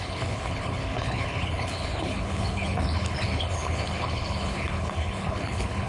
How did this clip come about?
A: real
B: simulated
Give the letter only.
B